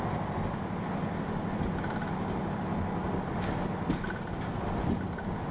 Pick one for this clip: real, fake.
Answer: real